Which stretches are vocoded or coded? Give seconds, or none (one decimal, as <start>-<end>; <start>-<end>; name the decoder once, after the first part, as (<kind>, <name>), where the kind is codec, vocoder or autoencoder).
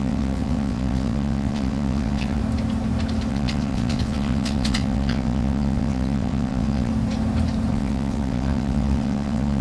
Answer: 0.0-2.4 (vocoder, WaveNeXt); 3.3-6.9; 7.7-9.6